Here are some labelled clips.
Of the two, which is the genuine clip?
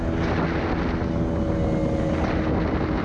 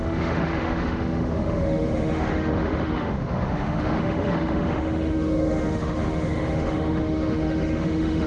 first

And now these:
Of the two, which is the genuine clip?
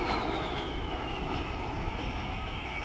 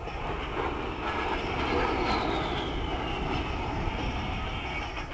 second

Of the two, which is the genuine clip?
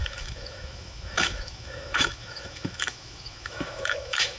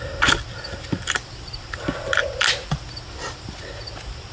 second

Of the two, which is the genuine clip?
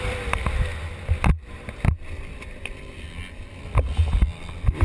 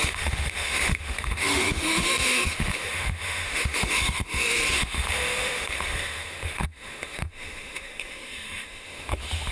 first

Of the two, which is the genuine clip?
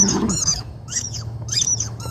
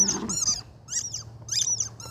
second